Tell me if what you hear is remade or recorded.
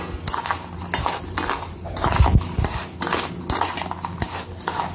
recorded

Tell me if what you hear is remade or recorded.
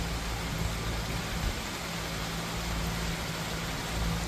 recorded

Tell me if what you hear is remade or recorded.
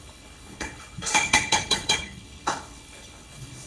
remade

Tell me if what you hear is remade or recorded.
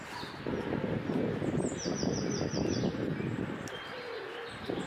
recorded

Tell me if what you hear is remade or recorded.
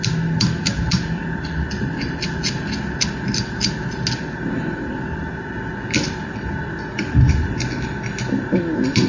recorded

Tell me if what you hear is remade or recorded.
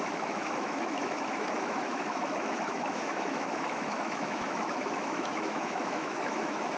remade